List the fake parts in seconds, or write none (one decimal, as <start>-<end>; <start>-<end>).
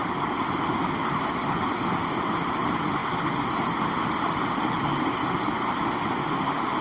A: 6.2-6.8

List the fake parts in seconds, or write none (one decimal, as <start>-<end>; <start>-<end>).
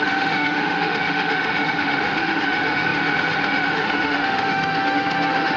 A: 0.0-5.6